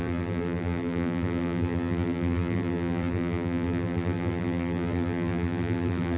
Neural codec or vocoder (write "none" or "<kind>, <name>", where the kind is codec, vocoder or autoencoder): vocoder, BigVGAN v2